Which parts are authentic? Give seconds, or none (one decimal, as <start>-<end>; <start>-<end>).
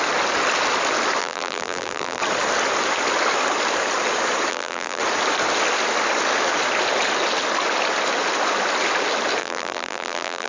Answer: 0.0-1.2; 2.2-4.5; 5.0-9.4